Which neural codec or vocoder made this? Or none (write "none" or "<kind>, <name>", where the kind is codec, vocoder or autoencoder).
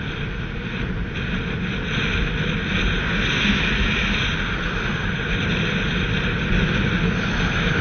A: none